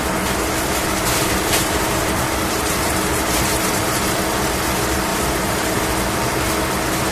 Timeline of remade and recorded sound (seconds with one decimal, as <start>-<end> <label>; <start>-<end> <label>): 0.0-0.8 recorded; 0.8-4.2 remade; 4.2-5.1 recorded; 5.1-5.8 remade; 5.8-7.1 recorded